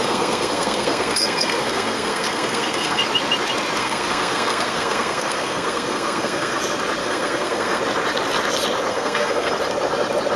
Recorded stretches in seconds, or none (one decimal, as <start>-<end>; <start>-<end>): 3.0-3.8; 6.6-7.0; 7.8-8.9; 9.5-10.4